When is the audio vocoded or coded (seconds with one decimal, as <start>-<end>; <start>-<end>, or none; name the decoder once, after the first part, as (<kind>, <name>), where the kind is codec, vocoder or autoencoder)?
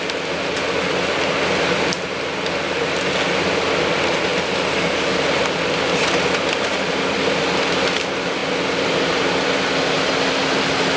none